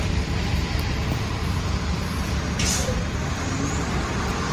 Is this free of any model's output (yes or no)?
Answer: no